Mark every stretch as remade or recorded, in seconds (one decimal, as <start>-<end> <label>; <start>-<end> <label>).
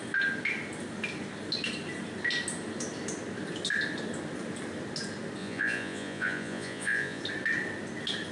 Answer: 0.0-5.4 recorded; 5.4-7.2 remade; 7.2-8.3 recorded